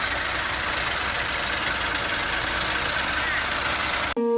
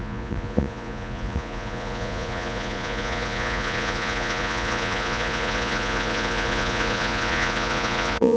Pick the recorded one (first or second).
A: first